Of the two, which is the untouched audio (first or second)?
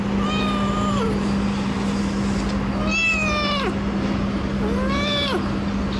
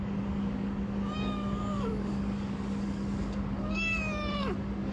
first